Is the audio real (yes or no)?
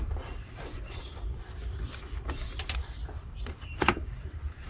no